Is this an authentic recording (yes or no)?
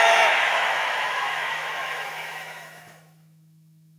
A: no